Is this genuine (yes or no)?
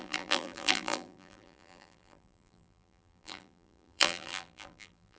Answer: no